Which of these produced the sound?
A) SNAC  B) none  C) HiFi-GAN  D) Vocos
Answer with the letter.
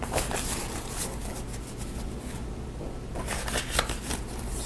B